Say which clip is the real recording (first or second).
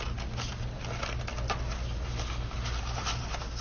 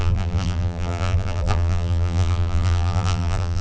first